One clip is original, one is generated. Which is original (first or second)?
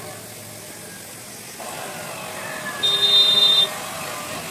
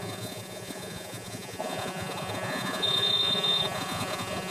first